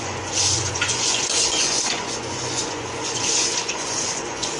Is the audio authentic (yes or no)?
no